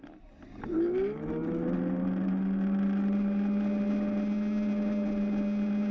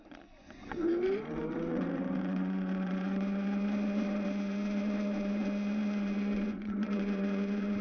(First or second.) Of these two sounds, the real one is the first